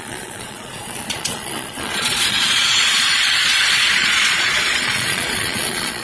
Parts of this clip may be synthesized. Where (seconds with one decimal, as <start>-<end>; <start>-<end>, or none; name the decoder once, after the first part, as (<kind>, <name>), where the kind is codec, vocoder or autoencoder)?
0.0-6.0 (vocoder, Vocos)